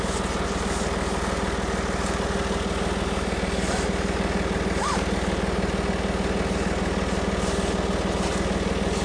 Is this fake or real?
real